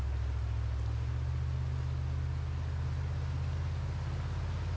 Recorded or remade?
recorded